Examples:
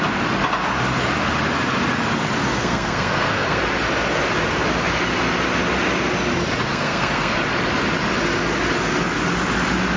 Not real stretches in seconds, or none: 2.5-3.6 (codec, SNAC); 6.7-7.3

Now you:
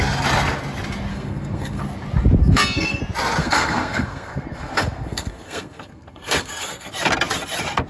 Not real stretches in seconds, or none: 1.1-1.8 (codec, SNAC); 2.4-3.0; 3.4-6.9

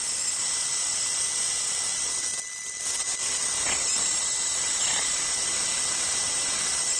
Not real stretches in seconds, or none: none

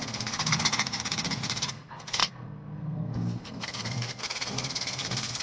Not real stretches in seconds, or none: 0.0-0.7 (codec, SNAC); 1.7-5.4

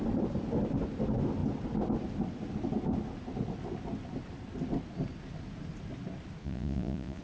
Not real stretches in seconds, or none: 6.4-7.2 (vocoder, Vocos)